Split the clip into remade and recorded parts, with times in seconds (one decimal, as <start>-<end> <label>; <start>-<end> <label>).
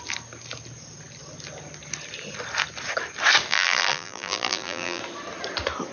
0.0-3.5 recorded; 3.5-5.0 remade; 5.0-5.9 recorded